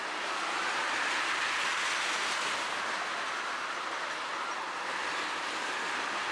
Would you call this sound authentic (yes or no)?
yes